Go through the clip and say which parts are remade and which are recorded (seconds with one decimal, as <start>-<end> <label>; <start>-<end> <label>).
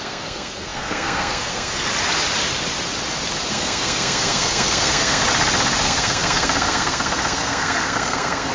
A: 0.0-1.9 remade; 1.9-3.5 recorded; 3.5-5.2 remade; 5.2-5.8 recorded; 5.8-8.5 remade